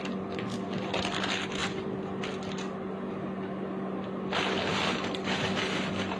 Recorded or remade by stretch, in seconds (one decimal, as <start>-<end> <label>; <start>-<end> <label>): 0.0-6.2 recorded